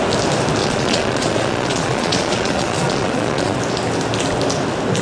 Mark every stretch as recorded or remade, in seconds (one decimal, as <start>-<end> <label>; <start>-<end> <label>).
0.0-0.6 recorded; 0.6-3.6 remade; 3.6-5.0 recorded